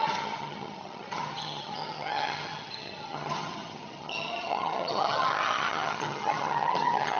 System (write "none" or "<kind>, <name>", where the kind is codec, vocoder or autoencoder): vocoder, HiFi-GAN